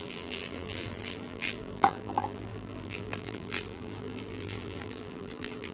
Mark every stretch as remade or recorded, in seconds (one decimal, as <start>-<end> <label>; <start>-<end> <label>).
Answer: 0.0-5.7 remade